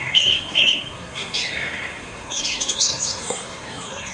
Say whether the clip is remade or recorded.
remade